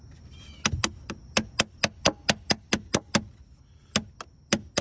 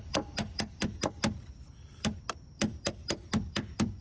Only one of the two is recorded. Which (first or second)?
first